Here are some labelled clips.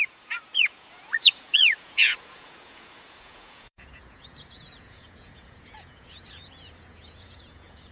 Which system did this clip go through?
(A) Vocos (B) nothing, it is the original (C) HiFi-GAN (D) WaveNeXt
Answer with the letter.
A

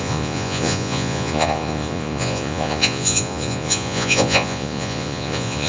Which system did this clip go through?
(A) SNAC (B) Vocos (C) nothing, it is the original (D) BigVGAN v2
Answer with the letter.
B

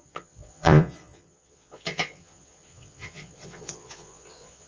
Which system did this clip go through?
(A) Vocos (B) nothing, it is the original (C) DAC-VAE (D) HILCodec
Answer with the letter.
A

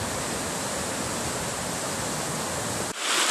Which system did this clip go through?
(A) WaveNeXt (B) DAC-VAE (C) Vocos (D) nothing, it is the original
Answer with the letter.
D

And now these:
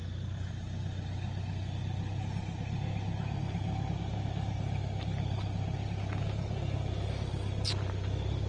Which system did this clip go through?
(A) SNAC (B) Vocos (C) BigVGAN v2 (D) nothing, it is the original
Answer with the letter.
D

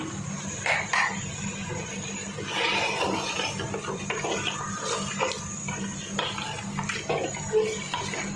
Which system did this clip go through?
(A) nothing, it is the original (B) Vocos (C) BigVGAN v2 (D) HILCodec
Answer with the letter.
A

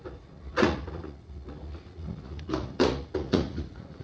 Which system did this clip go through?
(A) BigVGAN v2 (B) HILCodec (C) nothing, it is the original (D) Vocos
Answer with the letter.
D